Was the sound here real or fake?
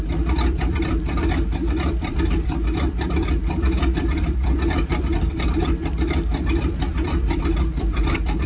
fake